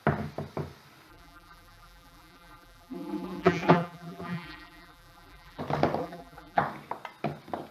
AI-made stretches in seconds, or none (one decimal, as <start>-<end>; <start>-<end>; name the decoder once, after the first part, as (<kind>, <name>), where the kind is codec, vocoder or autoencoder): 1.1-5.6 (vocoder, BigVGAN v2); 6.0-6.6